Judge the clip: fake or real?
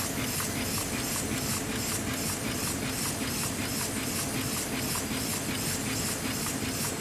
real